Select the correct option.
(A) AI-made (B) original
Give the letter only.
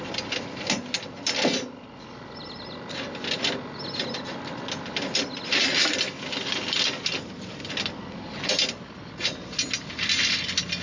B